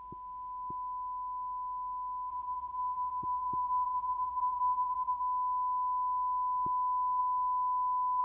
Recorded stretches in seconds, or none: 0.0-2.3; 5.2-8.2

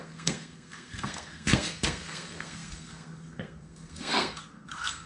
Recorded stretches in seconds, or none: none